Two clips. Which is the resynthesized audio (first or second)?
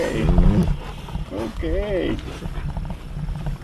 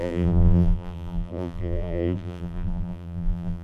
second